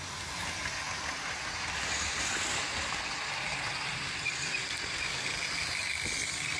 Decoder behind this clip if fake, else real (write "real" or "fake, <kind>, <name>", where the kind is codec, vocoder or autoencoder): real